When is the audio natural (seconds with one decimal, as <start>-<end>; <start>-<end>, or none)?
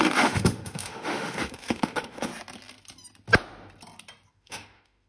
2.3-4.3